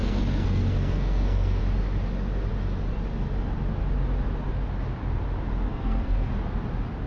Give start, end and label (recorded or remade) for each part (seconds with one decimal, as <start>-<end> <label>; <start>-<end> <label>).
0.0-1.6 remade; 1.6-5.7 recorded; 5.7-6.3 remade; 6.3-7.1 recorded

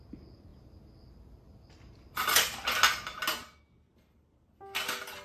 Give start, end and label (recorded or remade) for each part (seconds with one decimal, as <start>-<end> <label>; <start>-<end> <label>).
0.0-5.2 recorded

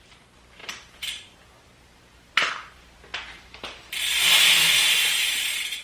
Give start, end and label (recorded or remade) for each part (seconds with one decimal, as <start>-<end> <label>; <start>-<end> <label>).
0.0-5.8 remade

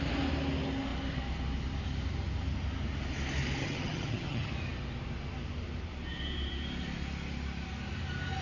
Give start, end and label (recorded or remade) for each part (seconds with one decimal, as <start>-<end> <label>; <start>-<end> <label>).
0.0-3.6 recorded; 3.6-4.5 remade; 4.5-8.4 recorded

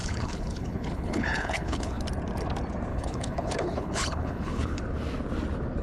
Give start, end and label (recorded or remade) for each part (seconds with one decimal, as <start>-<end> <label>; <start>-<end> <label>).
0.0-2.0 remade; 2.0-2.9 recorded; 2.9-4.8 remade; 4.8-5.8 recorded

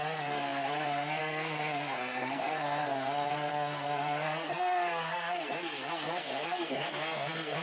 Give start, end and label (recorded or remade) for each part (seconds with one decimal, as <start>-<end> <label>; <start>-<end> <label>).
0.0-7.6 remade